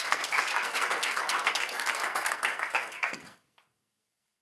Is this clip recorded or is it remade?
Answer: remade